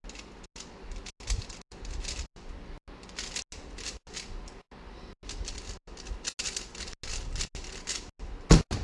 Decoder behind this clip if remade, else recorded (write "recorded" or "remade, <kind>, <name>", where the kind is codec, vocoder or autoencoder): recorded